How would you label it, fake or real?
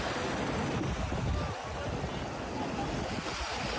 real